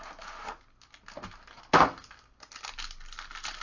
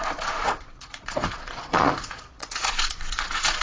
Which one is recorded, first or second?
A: first